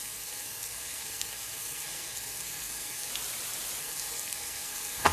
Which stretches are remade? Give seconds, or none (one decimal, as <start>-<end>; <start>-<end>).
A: 0.0-3.1; 3.8-5.1